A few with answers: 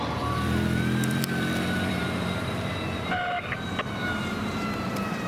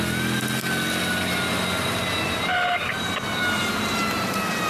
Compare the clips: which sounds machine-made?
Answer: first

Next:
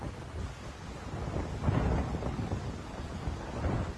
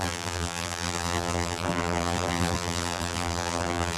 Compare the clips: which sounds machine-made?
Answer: second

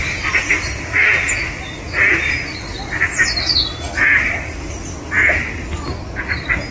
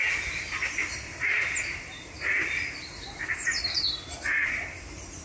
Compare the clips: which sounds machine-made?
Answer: second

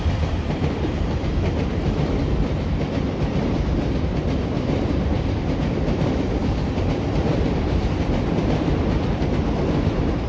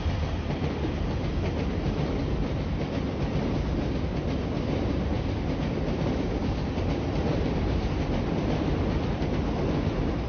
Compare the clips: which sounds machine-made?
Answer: first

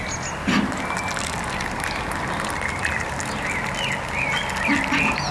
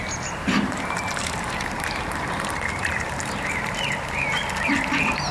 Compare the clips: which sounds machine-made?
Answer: second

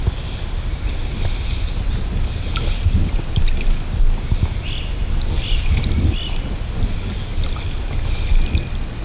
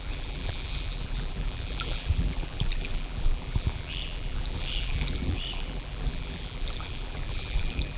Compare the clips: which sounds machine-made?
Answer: second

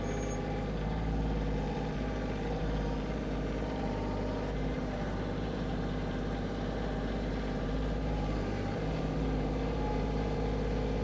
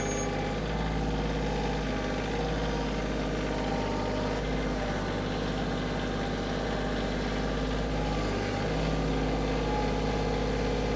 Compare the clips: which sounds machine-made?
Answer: first